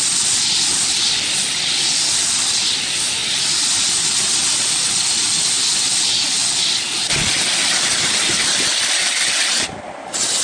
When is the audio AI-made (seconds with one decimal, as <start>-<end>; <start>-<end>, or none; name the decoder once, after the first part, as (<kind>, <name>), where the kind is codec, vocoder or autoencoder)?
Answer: none